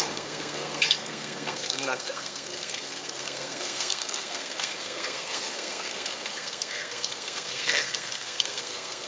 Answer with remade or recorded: remade